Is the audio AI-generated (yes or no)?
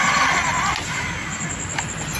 no